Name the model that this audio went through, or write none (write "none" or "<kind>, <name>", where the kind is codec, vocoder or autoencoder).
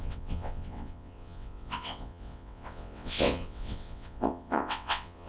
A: vocoder, WaveNeXt